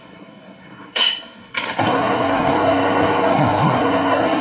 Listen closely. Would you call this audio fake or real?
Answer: fake